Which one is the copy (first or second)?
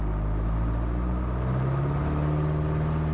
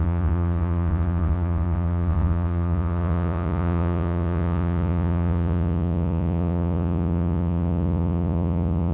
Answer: second